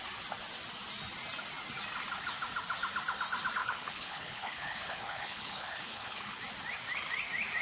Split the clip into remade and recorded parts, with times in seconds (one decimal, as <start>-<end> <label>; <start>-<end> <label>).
0.0-3.6 recorded; 3.6-6.4 remade; 6.4-7.6 recorded